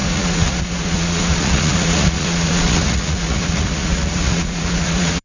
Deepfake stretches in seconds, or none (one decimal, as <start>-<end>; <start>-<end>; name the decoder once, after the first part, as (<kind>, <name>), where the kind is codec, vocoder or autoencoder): 0.0-5.2 (vocoder, Vocos)